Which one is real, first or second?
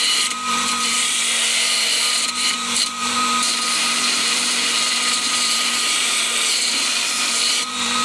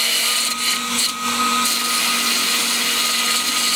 second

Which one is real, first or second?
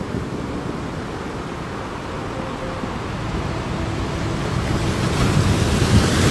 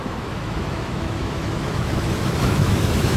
first